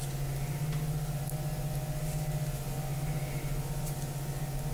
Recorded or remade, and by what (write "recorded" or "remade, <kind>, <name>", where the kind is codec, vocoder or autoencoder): recorded